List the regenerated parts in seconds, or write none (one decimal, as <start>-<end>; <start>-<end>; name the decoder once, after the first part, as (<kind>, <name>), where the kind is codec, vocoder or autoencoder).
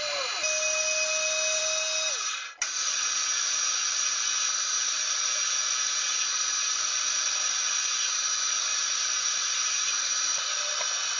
none